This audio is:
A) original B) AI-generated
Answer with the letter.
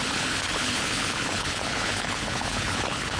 B